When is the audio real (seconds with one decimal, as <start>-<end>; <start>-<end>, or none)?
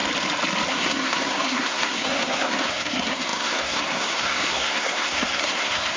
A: 0.0-0.7